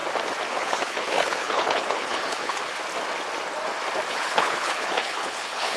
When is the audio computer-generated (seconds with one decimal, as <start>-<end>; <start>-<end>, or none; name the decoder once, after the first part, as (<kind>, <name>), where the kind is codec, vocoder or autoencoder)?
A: 0.5-2.6 (codec, HILCodec); 4.1-5.8